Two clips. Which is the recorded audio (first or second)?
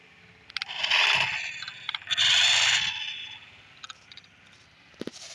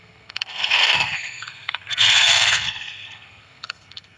first